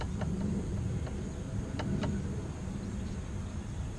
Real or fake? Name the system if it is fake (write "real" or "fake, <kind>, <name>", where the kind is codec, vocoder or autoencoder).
real